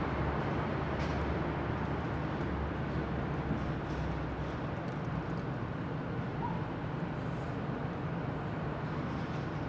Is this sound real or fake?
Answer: real